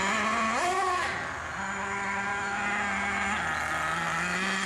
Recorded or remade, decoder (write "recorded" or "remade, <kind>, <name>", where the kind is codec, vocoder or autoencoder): recorded